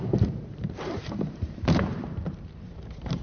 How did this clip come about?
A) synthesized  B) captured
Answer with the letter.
A